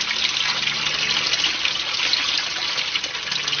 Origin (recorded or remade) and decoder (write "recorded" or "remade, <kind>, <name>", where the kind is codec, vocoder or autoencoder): recorded